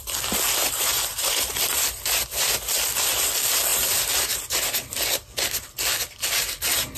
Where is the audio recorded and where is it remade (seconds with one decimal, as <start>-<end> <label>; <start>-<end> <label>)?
0.0-1.1 recorded; 1.1-2.5 remade; 2.5-7.0 recorded